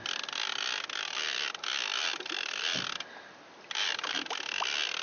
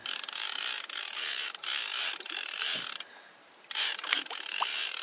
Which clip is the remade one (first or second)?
second